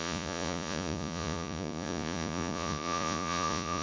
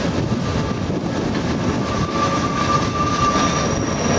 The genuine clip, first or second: second